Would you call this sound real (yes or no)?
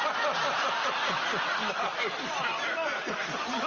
yes